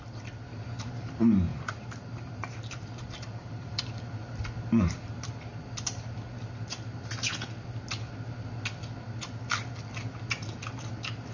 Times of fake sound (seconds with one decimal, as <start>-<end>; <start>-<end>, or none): 1.5-3.8